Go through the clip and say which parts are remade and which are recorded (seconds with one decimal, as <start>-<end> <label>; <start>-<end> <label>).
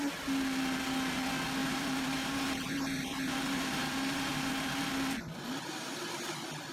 0.0-1.6 recorded; 1.6-4.9 remade; 4.9-6.7 recorded